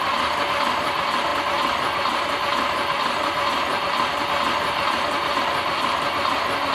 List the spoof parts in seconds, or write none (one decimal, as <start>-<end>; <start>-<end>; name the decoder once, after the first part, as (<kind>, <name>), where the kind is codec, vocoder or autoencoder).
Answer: none